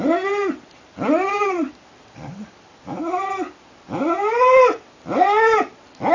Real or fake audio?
real